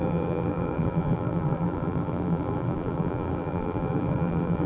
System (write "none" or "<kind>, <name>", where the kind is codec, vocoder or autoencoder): vocoder, BigVGAN v2